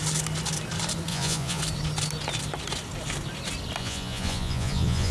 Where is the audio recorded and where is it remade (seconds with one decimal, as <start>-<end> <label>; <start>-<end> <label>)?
0.0-1.1 recorded; 1.1-1.6 remade; 1.6-3.8 recorded; 3.8-5.1 remade